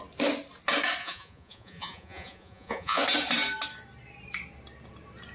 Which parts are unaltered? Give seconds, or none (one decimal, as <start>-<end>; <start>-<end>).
0.0-1.0; 3.0-5.3